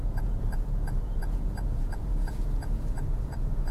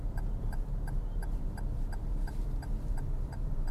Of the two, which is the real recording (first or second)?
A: second